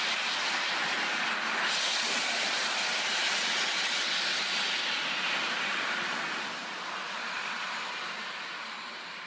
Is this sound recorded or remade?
recorded